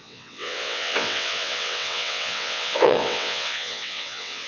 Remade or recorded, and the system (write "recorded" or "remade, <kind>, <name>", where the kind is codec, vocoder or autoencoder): remade, vocoder, WaveNeXt